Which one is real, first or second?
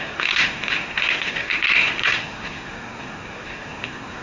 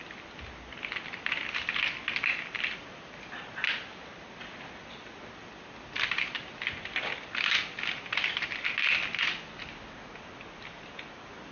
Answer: second